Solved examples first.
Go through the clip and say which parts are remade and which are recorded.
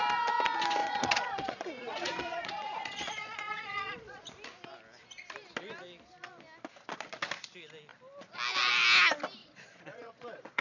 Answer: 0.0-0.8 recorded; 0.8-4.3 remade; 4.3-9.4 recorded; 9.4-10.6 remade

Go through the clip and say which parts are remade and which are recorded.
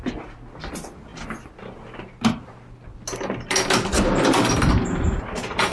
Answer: 0.0-5.7 recorded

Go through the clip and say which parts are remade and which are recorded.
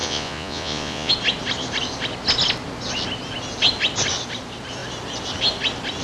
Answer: 0.0-1.1 remade; 1.1-6.0 recorded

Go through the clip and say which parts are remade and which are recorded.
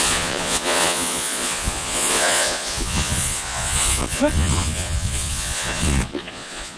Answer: 0.0-6.8 remade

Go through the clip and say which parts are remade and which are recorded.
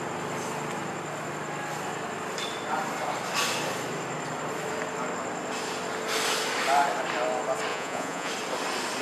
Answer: 0.0-7.7 recorded; 7.7-8.3 remade; 8.3-9.0 recorded